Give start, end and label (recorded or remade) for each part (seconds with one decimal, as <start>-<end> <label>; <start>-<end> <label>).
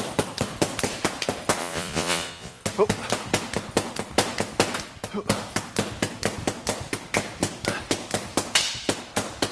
0.0-1.6 recorded; 1.6-2.6 remade; 2.6-9.5 recorded